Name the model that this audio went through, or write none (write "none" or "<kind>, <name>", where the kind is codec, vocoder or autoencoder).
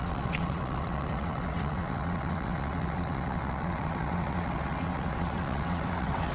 vocoder, WaveNeXt